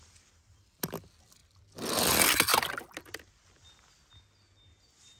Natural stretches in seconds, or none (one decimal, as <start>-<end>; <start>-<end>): 0.0-5.2